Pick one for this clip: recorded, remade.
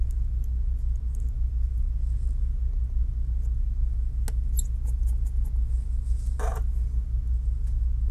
recorded